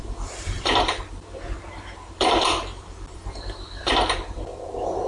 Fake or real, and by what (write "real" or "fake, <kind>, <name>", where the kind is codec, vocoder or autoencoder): fake, vocoder, BigVGAN v2